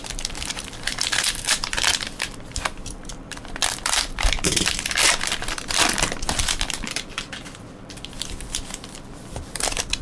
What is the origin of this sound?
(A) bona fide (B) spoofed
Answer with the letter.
B